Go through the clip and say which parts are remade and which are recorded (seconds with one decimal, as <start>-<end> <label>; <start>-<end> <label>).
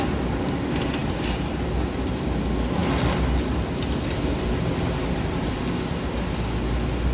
0.0-7.1 recorded